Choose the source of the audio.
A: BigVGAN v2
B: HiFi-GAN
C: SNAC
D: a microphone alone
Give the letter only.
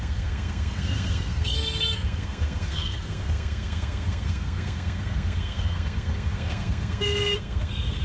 C